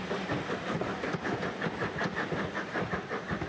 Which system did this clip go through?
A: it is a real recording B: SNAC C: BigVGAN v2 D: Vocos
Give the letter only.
A